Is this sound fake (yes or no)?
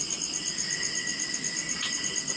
no